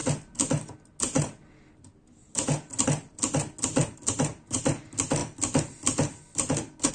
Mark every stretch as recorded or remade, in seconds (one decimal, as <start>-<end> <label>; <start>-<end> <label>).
0.0-3.8 recorded; 3.8-4.6 remade; 4.6-6.9 recorded